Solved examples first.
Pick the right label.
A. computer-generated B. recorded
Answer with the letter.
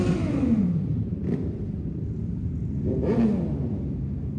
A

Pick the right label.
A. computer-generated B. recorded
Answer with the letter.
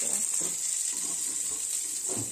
B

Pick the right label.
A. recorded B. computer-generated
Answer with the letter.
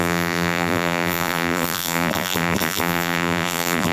B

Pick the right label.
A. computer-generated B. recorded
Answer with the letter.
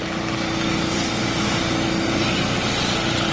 B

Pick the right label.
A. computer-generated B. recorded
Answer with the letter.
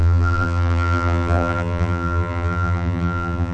A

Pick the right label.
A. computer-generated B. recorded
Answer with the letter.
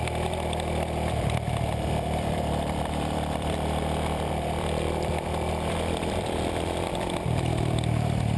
A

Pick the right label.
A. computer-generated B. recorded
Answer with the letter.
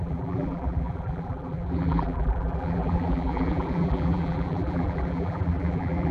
A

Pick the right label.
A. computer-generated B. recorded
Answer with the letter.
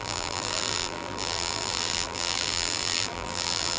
A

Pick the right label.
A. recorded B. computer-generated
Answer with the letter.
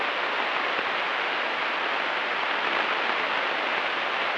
A